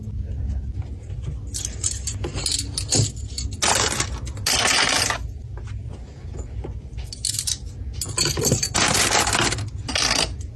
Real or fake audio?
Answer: real